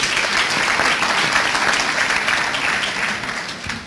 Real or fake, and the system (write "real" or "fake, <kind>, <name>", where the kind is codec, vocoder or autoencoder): real